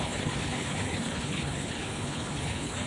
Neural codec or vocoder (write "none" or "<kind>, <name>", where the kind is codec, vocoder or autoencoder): codec, HILCodec